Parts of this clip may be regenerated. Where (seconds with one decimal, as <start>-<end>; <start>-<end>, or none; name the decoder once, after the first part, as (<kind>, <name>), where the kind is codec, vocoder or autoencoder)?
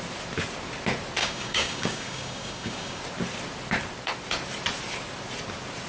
1.2-3.0 (codec, DAC)